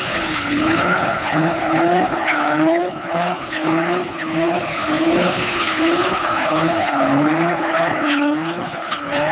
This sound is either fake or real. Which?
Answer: fake